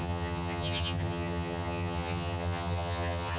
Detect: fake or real fake